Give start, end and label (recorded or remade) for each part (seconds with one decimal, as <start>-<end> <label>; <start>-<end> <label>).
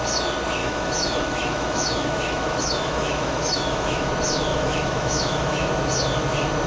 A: 0.0-0.6 recorded; 0.6-4.1 remade; 4.1-4.5 recorded; 4.5-5.7 remade; 5.7-6.7 recorded